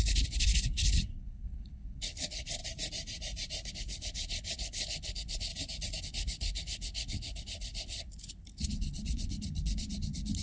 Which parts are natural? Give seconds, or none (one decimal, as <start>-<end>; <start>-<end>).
2.6-3.7; 5.5-6.0